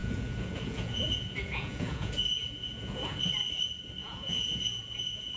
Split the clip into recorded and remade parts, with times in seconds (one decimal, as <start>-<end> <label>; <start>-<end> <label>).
0.0-3.2 remade; 3.2-4.0 recorded; 4.0-5.4 remade